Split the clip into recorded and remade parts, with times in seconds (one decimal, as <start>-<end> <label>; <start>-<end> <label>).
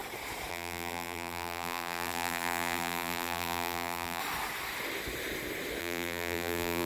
0.0-0.5 recorded; 0.5-4.2 remade; 4.2-5.8 recorded; 5.8-6.9 remade